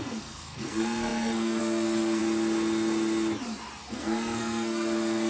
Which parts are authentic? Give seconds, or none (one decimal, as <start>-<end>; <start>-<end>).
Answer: 2.2-3.9